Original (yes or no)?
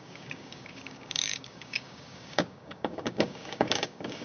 no